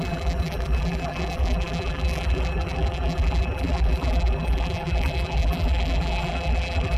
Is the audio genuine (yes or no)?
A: no